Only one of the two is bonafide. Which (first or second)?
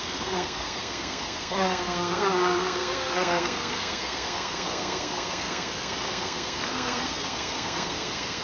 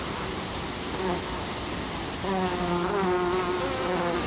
second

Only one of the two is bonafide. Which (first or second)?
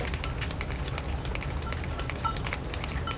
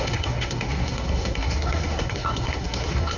first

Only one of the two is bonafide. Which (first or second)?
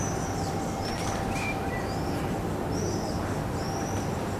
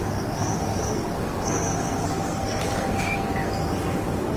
first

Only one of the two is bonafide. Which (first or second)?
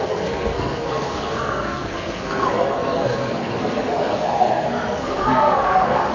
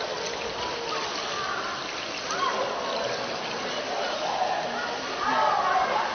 second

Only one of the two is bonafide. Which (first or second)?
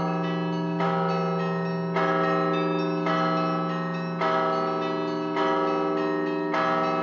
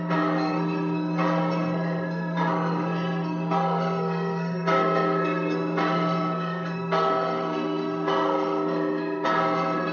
first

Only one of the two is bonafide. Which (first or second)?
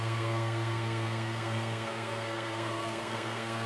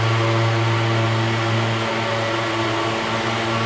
second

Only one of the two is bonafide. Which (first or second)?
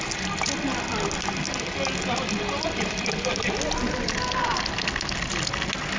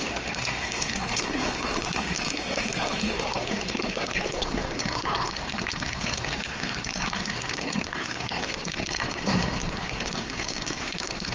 first